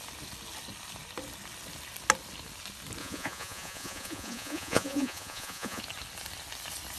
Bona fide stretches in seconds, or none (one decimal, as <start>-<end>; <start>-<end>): 0.0-3.0; 5.8-7.0